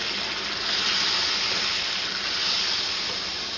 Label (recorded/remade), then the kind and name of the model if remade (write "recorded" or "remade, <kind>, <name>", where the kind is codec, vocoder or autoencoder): recorded